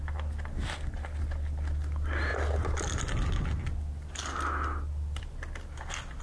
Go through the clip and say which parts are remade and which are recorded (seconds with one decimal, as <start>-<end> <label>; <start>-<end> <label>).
0.0-6.2 recorded